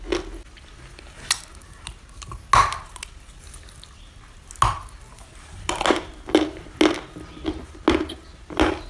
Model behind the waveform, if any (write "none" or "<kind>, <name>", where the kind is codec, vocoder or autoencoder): none